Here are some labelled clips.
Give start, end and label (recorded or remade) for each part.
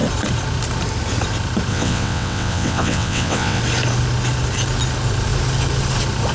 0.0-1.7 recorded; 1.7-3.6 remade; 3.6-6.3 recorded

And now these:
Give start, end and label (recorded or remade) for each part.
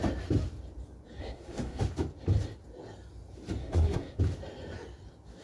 0.0-1.2 recorded; 1.2-1.8 remade; 1.8-3.6 recorded; 3.6-4.2 remade; 4.2-5.4 recorded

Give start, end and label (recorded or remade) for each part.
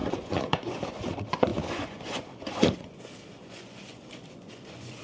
0.0-5.0 remade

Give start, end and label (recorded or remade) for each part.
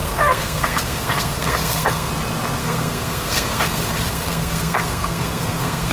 0.0-2.1 remade; 2.1-2.6 recorded; 2.6-5.9 remade